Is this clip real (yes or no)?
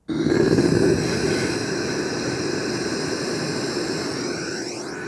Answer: yes